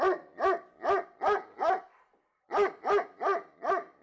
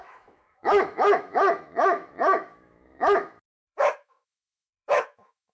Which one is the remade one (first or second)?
second